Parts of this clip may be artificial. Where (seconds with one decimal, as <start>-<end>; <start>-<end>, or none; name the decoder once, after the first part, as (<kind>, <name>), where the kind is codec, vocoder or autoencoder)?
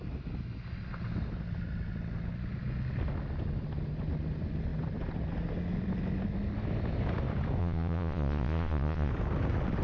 7.6-9.1 (vocoder, Vocos)